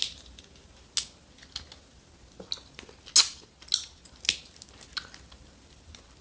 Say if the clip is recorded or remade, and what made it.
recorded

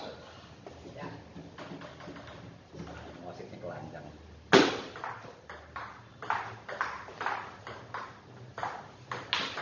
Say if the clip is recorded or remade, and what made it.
recorded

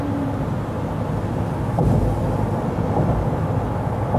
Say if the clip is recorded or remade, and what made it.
recorded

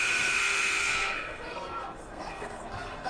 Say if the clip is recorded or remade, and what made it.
remade, codec, SNAC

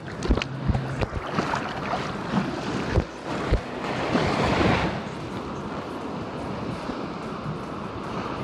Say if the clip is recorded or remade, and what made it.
recorded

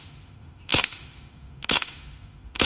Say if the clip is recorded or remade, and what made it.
remade, autoencoder, DAC-VAE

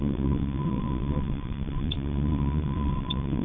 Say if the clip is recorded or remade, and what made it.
remade, vocoder, WaveNeXt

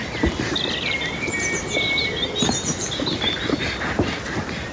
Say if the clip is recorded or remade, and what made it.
recorded